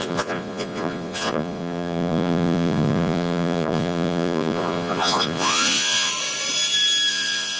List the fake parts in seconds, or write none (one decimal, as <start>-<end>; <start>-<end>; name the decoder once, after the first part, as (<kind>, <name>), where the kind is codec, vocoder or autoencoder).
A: 0.0-6.1 (vocoder, Vocos); 7.1-7.6